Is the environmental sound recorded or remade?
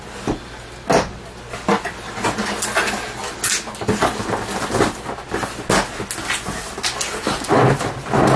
recorded